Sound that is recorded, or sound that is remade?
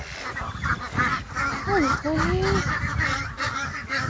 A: recorded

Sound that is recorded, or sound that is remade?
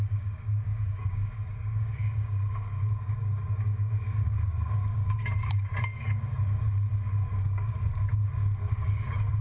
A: remade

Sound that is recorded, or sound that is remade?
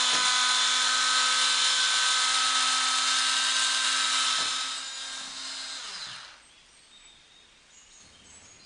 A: recorded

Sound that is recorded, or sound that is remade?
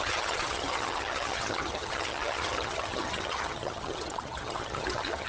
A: remade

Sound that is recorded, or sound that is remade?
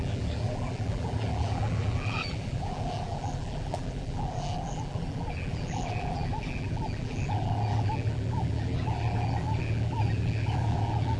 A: remade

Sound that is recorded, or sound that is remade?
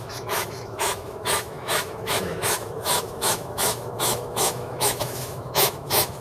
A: remade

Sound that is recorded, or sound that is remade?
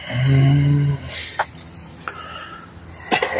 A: recorded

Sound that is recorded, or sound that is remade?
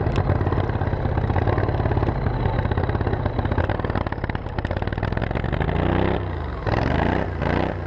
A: recorded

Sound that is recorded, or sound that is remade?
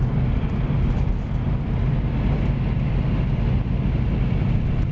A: recorded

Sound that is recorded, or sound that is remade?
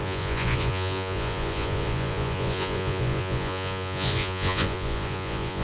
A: remade